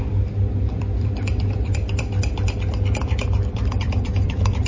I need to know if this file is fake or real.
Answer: fake